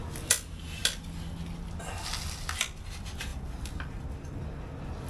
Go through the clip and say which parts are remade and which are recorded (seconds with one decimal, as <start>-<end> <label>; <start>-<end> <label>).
0.0-5.1 recorded